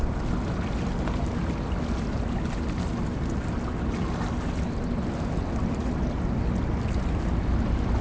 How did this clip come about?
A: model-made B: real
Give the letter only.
B